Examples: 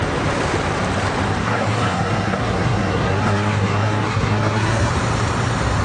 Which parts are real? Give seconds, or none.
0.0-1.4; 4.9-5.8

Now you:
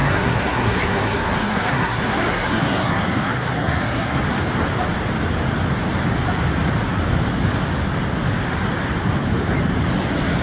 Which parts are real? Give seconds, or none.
4.2-10.4